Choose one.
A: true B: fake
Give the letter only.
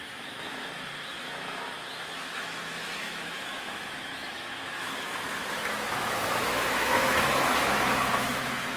B